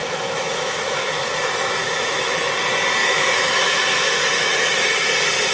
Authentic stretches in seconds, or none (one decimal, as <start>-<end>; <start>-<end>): 1.3-1.8; 2.5-3.0; 4.8-5.5